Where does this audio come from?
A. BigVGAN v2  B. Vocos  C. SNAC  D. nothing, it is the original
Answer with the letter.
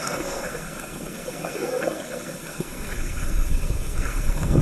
C